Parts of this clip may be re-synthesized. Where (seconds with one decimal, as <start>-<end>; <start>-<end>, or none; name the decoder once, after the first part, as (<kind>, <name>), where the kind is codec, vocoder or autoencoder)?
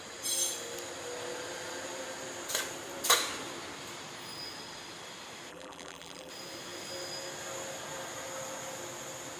5.5-6.3 (vocoder, BigVGAN v2)